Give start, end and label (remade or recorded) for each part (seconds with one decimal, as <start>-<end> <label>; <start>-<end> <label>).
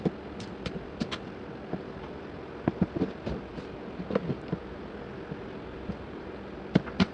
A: 0.0-7.1 remade